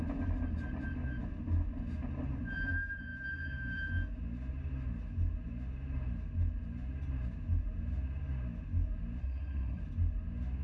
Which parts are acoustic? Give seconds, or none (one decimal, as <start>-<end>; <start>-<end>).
0.0-9.2; 9.8-10.6

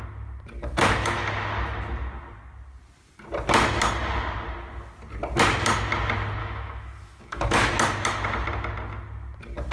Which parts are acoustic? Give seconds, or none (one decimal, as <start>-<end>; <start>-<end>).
0.0-6.4; 7.7-9.7